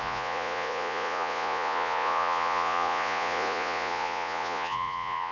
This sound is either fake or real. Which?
fake